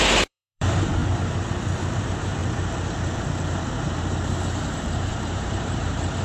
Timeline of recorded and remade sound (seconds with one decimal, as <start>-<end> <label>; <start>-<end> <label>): 0.0-1.0 remade; 1.0-2.0 recorded; 2.0-2.4 remade; 2.4-3.9 recorded; 3.9-6.2 remade